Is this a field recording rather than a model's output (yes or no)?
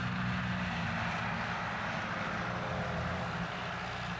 yes